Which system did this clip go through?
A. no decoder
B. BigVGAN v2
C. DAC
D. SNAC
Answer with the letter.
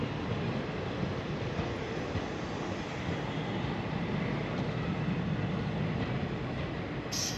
A